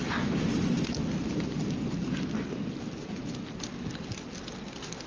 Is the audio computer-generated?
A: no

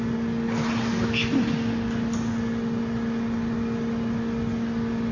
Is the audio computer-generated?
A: no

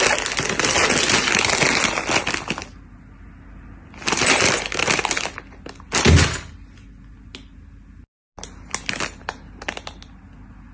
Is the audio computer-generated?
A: no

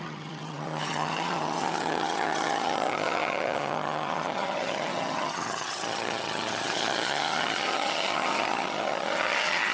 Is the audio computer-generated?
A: yes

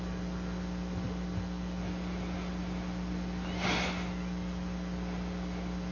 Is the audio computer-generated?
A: no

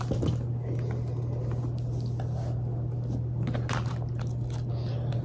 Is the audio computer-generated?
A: no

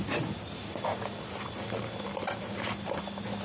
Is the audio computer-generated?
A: no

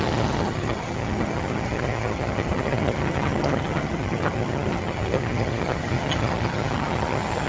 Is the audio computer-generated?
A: yes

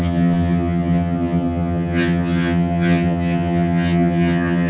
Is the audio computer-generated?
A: yes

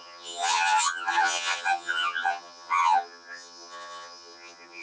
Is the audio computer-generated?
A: yes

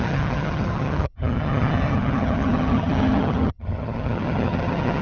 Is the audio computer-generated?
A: yes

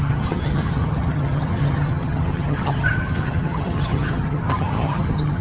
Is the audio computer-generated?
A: yes